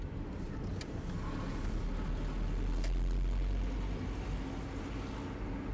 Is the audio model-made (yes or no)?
no